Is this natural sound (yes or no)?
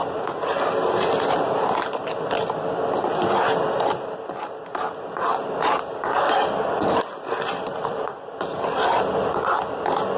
yes